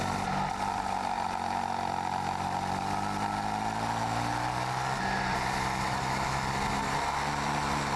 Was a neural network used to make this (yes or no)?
no